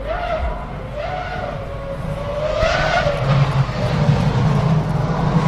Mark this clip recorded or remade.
recorded